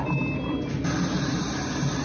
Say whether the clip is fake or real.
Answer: real